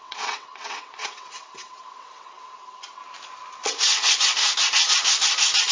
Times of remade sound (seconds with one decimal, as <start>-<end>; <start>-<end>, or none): 0.0-3.0; 3.8-4.4